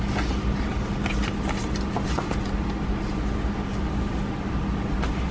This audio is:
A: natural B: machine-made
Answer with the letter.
A